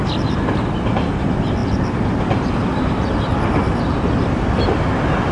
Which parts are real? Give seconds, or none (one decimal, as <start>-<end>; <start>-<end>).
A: 0.0-5.3